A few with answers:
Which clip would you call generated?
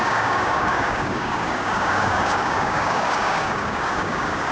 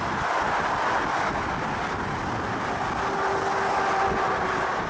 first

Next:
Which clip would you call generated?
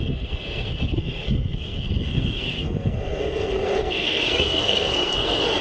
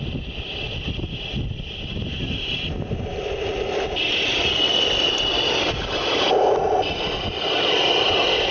first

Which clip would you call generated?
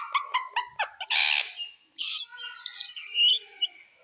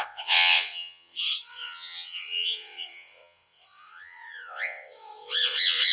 second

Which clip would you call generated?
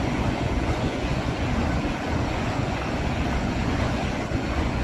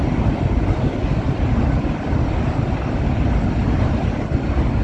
first